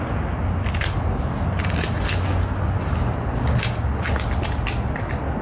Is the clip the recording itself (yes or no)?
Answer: yes